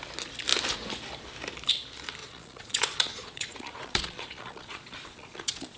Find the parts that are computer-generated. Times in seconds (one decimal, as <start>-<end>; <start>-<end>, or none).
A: 2.2-5.8